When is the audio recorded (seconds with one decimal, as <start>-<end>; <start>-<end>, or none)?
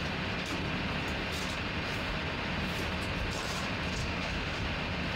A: 0.0-4.0; 4.6-5.2